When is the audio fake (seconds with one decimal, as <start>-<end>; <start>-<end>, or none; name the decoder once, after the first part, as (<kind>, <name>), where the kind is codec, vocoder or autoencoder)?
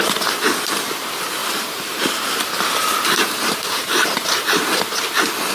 1.4-4.7 (vocoder, BigVGAN v2)